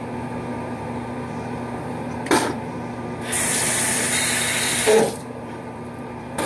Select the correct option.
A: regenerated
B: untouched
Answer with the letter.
A